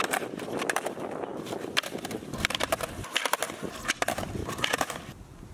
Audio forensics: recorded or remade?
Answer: remade